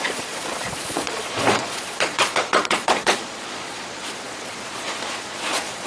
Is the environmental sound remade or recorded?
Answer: remade